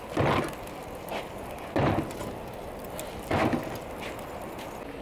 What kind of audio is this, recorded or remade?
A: recorded